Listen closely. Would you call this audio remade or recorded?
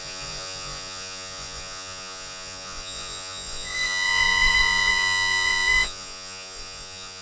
remade